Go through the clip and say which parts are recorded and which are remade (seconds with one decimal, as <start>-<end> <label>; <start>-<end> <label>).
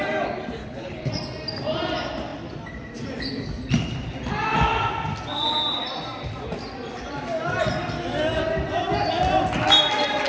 0.0-0.6 recorded; 0.6-1.1 remade; 1.1-10.3 recorded